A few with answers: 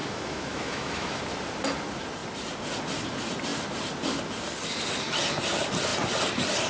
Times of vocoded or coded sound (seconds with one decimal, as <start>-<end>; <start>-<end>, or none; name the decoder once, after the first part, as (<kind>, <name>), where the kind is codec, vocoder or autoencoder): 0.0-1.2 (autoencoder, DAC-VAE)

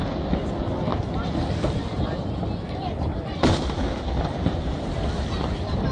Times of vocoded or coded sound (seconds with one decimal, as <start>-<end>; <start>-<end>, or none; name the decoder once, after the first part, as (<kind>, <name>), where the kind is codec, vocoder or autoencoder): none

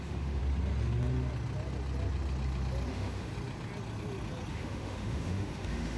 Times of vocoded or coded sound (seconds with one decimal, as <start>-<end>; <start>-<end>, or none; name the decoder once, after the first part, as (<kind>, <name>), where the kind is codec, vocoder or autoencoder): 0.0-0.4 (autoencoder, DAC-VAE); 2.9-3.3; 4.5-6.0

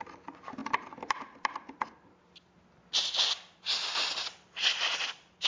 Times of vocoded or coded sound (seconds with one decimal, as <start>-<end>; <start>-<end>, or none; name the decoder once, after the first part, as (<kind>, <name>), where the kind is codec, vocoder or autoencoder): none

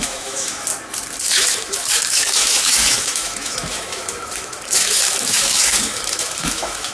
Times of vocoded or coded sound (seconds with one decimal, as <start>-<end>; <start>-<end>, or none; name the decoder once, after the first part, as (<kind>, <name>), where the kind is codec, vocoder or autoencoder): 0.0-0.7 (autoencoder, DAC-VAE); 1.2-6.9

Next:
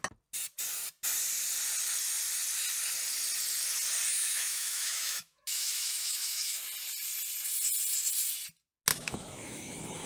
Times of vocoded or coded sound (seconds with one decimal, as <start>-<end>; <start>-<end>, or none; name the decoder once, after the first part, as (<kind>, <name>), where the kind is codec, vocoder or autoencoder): 4.1-6.6 (autoencoder, DAC-VAE); 8.9-10.1